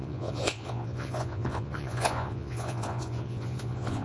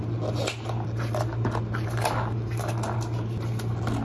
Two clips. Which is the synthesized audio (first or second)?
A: first